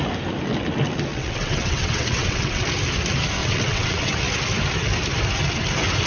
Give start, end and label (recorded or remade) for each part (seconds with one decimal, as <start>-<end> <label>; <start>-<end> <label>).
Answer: 0.0-1.1 recorded; 1.1-2.6 remade; 2.6-3.4 recorded; 3.4-4.2 remade; 4.2-6.1 recorded